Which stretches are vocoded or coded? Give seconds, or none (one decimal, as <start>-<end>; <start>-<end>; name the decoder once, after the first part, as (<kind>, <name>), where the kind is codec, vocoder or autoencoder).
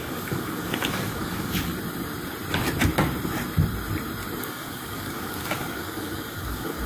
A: 0.0-1.7 (codec, DAC); 4.4-6.9